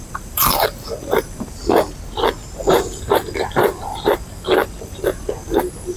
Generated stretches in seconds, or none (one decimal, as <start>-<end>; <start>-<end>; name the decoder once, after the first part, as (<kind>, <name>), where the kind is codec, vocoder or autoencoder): 0.0-1.6 (vocoder, BigVGAN v2); 2.6-6.0